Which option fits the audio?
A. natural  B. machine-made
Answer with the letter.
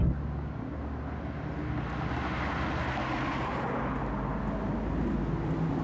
A